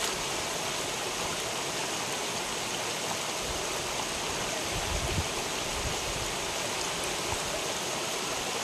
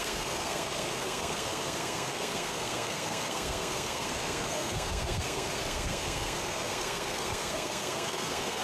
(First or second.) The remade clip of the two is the second